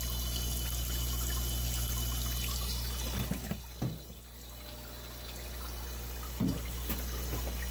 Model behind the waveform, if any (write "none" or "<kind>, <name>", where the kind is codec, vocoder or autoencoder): none